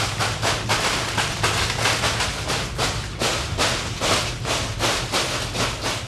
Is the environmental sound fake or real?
real